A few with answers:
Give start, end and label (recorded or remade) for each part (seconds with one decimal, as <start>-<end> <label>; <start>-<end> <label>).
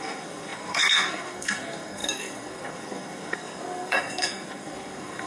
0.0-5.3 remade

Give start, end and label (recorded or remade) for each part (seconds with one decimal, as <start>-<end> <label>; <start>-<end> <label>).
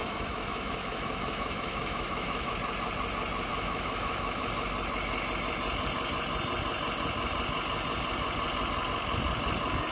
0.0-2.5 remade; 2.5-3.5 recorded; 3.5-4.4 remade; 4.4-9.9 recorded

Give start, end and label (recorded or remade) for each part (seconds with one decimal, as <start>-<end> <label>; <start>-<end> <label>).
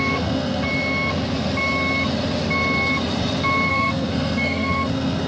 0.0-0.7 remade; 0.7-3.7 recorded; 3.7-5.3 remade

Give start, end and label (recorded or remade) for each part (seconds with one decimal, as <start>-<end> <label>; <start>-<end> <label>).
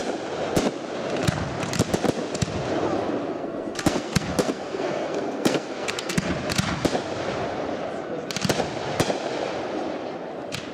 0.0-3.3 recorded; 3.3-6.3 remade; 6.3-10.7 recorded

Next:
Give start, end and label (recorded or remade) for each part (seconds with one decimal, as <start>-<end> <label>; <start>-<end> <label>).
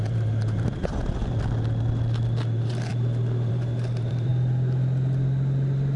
0.0-1.2 remade; 1.2-2.4 recorded; 2.4-2.9 remade; 2.9-3.5 recorded; 3.5-4.3 remade; 4.3-6.0 recorded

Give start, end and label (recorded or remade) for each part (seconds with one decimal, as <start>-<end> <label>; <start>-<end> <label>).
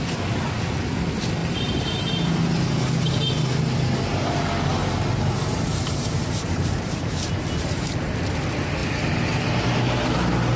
0.0-1.4 recorded; 1.4-2.0 remade; 2.0-4.1 recorded; 4.1-8.2 remade; 8.2-10.6 recorded